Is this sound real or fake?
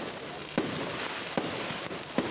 real